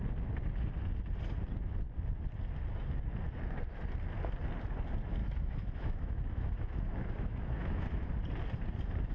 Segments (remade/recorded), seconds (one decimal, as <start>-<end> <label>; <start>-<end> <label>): 0.0-5.2 recorded; 5.2-8.1 remade; 8.1-9.1 recorded